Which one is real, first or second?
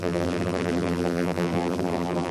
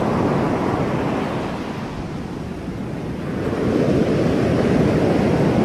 second